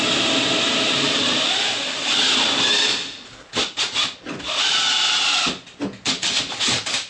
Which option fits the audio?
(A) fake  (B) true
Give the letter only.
B